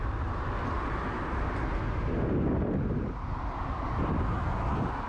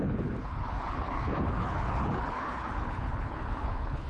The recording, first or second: first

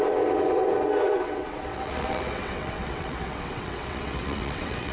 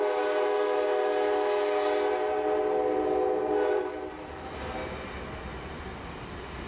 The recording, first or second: second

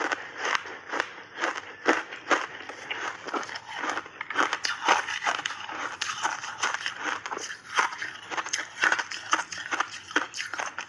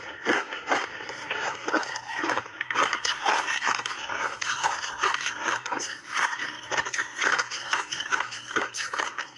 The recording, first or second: first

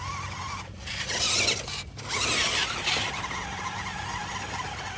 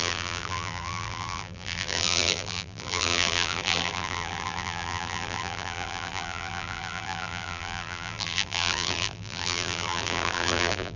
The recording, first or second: first